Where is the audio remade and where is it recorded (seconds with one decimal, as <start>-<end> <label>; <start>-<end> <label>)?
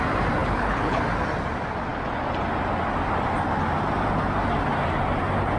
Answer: 0.0-0.4 recorded; 0.4-1.0 remade; 1.0-5.6 recorded